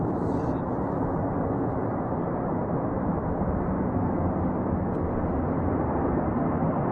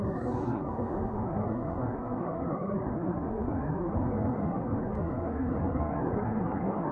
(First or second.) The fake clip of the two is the second